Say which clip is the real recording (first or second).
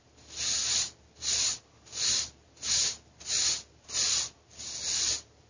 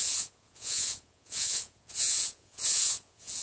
first